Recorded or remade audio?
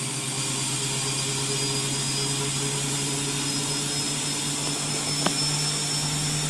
recorded